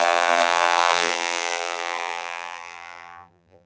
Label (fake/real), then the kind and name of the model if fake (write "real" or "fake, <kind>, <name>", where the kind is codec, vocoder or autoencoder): fake, vocoder, BigVGAN v2